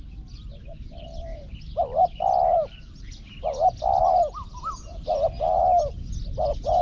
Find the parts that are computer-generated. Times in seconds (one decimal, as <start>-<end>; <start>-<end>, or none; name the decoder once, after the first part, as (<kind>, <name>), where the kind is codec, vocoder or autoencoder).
none